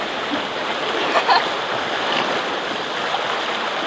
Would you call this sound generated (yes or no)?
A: no